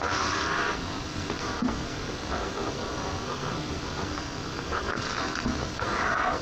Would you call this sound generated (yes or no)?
yes